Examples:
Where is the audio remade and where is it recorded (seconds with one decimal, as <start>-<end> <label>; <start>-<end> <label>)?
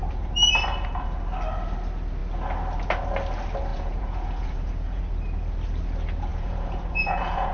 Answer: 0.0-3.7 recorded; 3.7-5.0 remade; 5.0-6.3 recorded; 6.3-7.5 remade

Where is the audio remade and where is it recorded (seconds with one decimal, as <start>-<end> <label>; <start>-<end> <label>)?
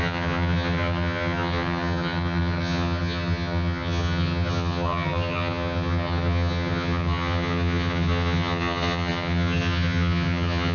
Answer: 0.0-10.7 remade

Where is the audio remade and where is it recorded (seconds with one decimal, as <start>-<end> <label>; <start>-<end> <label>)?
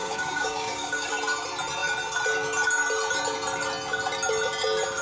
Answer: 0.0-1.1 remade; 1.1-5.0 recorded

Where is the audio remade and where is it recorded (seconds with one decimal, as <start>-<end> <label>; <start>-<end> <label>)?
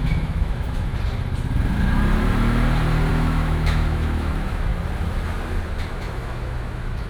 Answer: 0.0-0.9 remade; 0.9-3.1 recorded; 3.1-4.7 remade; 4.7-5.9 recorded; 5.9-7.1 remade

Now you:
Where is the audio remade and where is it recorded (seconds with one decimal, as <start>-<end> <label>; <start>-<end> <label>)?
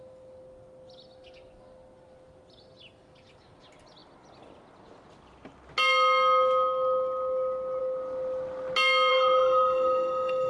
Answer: 0.0-9.1 recorded; 9.1-10.5 remade